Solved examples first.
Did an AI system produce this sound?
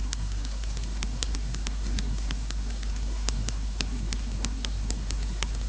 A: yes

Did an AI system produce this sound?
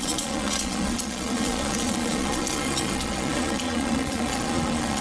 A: yes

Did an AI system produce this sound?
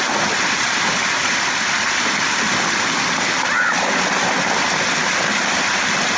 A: no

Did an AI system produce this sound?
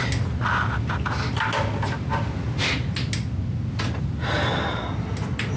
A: no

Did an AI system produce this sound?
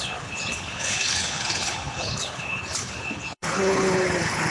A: yes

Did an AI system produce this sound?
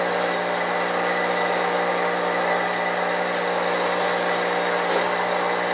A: no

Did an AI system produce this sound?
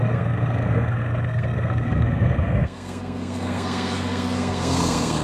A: yes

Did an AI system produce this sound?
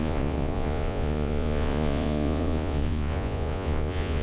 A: yes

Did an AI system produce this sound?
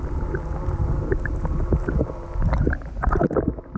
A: no